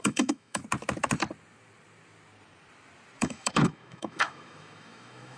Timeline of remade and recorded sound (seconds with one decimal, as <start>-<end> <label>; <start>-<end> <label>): 0.0-0.6 remade; 0.6-3.2 recorded; 3.2-5.4 remade